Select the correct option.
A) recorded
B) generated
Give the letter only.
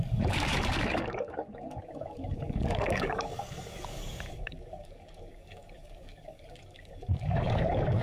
B